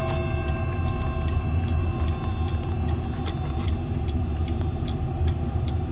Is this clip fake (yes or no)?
no